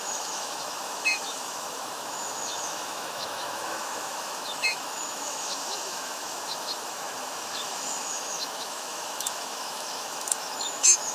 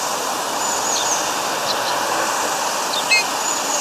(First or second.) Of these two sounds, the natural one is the second